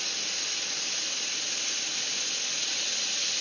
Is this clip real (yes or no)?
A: yes